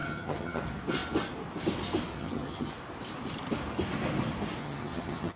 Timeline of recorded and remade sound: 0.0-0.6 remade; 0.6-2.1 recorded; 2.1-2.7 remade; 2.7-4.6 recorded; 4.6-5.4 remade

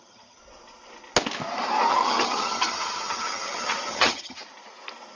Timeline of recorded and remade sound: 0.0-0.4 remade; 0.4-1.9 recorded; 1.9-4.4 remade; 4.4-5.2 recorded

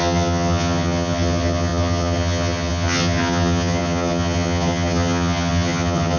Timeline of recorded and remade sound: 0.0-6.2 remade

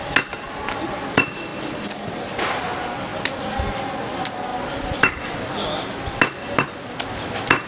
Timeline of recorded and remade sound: 0.0-7.7 recorded

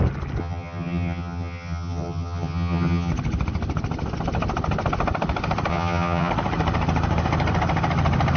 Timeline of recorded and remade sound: 0.0-0.4 recorded; 0.4-3.1 remade; 3.1-5.7 recorded; 5.7-6.3 remade; 6.3-8.4 recorded

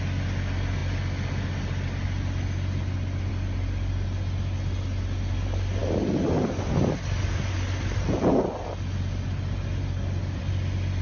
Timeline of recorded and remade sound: 0.0-11.0 recorded

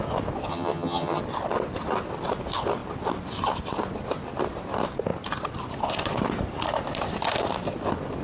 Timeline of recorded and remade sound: 0.0-0.5 recorded; 0.5-1.2 remade; 1.2-8.2 recorded